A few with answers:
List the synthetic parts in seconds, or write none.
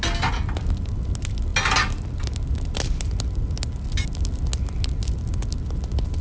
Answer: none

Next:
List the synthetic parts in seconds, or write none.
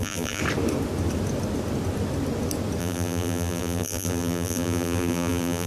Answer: 0.0-0.4; 2.8-5.7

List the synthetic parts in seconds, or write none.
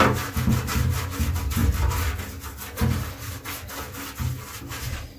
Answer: none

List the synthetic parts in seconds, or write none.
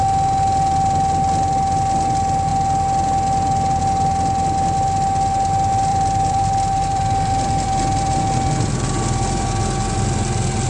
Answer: 5.9-8.2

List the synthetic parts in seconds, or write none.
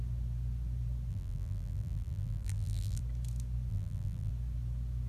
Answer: 1.1-3.0; 3.7-4.3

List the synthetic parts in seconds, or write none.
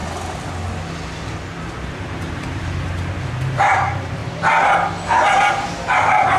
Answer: 2.0-4.2; 5.3-6.4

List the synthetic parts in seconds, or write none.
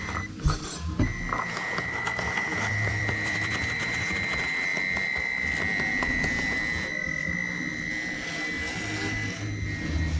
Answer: 2.5-4.0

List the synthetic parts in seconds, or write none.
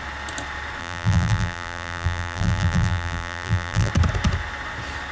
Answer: 0.8-3.9